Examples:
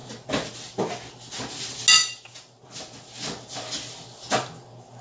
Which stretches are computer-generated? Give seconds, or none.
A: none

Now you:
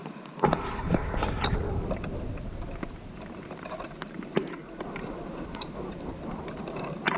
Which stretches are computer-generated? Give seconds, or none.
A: none